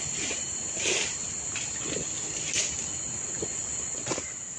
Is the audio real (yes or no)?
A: yes